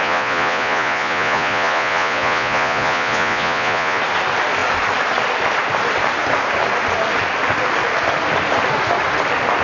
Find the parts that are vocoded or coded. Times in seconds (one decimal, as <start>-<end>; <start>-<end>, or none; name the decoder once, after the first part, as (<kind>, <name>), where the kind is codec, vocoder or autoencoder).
0.0-4.0 (vocoder, Vocos)